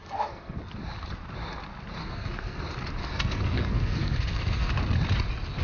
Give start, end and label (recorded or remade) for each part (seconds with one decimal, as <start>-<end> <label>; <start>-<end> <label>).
0.0-0.7 remade; 0.7-2.0 recorded; 2.0-2.6 remade; 2.6-3.0 recorded; 3.0-4.7 remade; 4.7-5.6 recorded